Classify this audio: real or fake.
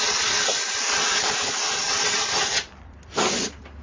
fake